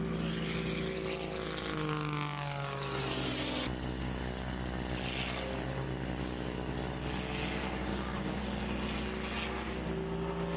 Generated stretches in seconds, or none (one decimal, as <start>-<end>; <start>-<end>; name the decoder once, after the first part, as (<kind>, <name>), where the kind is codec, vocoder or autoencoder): 7.9-8.4 (codec, DAC)